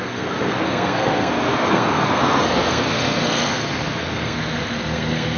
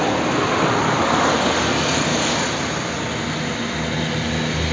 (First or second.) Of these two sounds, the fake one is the first